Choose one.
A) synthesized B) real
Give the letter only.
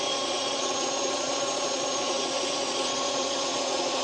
A